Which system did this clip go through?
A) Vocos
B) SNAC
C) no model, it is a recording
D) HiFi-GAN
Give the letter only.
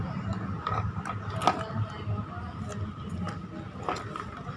C